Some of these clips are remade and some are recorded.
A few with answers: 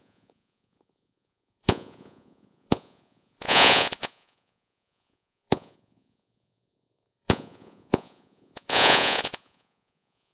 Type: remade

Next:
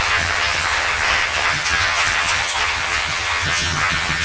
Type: remade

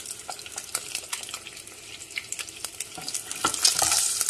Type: recorded